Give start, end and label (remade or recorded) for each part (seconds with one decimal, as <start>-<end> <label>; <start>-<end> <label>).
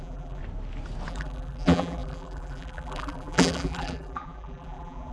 0.0-0.4 remade; 0.4-1.1 recorded; 1.1-5.1 remade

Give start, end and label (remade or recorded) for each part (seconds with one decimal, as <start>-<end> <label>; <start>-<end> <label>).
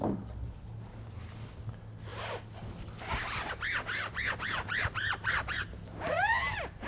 0.0-6.9 recorded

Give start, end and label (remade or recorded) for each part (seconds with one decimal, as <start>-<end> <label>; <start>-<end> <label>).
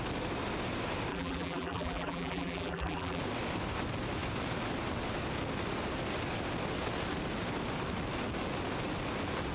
0.0-1.1 recorded; 1.1-3.2 remade; 3.2-9.5 recorded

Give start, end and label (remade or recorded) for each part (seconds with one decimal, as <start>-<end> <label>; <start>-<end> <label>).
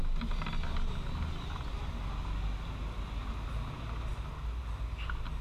0.0-5.4 recorded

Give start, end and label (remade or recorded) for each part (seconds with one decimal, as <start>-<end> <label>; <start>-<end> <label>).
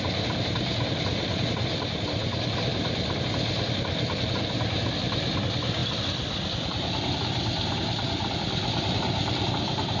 0.0-10.0 recorded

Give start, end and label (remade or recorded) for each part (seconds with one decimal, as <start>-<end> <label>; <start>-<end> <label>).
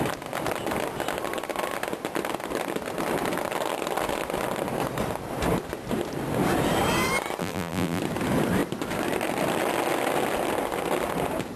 0.0-7.4 recorded; 7.4-8.0 remade; 8.0-11.6 recorded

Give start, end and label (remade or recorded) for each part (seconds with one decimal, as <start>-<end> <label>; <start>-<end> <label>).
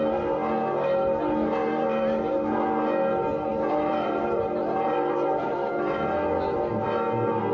0.0-1.6 recorded; 1.6-2.3 remade; 2.3-3.5 recorded; 3.5-5.7 remade; 5.7-7.5 recorded